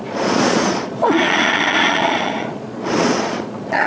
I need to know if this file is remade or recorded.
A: remade